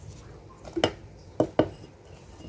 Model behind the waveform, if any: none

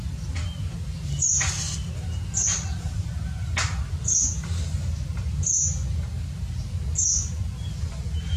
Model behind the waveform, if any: none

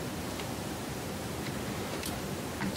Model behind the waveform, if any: vocoder, BigVGAN v2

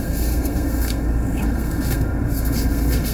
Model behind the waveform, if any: codec, SNAC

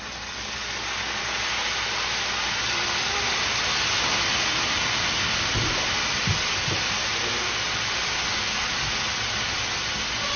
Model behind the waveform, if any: none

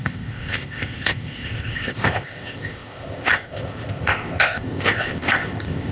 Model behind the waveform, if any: codec, ZipCodec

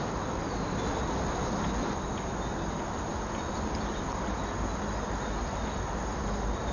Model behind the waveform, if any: none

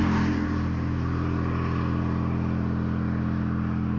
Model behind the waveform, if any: none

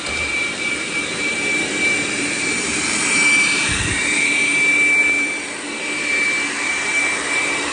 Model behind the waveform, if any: vocoder, BigVGAN v2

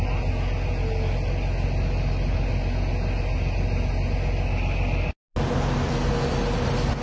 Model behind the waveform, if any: none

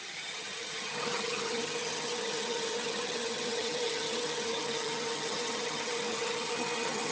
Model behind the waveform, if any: vocoder, HiFi-GAN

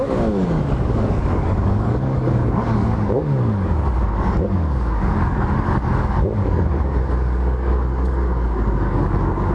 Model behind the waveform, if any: codec, DAC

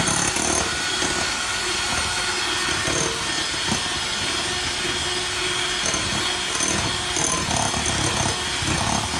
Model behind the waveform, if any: none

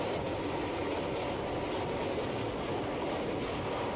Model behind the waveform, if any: none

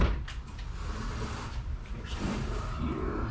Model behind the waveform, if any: none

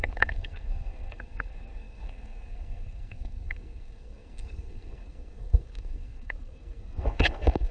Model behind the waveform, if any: codec, SNAC